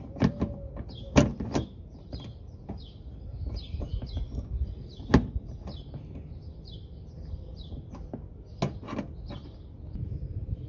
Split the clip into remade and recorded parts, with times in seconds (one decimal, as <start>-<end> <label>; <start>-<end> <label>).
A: 0.0-10.7 recorded